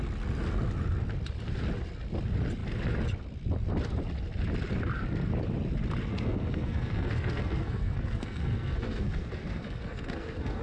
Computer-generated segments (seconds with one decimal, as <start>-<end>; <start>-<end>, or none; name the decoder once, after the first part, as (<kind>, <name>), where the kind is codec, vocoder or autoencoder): 6.1-10.6 (codec, SNAC)